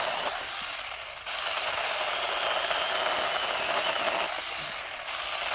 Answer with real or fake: real